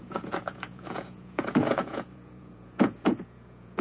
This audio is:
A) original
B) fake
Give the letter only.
B